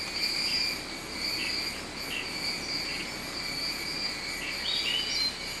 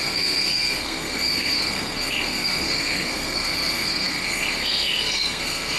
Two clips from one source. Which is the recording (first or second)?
first